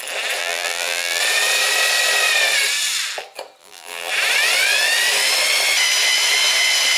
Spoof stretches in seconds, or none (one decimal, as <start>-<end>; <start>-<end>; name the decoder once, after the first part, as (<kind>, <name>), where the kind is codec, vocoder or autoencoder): 0.4-1.2 (vocoder, BigVGAN v2); 3.6-4.1